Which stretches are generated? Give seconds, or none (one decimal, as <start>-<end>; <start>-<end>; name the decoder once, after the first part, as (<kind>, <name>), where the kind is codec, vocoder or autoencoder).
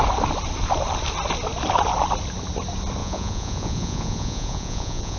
3.0-5.2 (vocoder, Vocos)